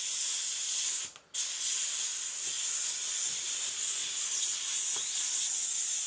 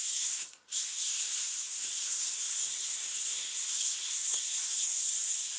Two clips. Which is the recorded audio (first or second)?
first